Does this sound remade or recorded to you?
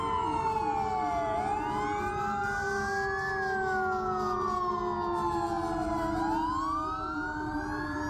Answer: recorded